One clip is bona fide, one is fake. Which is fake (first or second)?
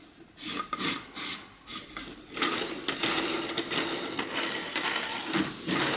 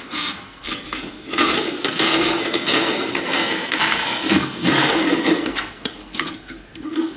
second